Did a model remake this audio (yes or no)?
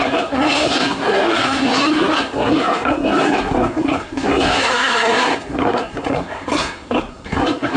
yes